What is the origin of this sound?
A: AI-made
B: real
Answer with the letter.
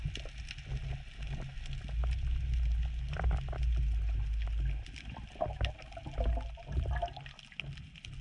B